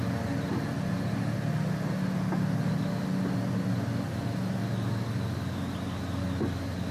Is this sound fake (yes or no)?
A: no